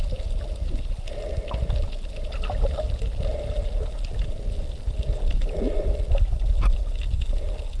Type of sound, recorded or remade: recorded